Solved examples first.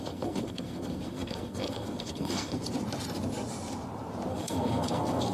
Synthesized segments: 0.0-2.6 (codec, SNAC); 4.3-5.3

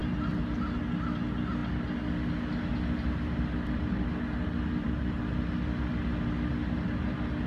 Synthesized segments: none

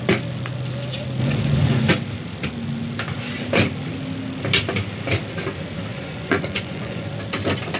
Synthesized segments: 1.2-1.9 (vocoder, Vocos); 5.9-7.1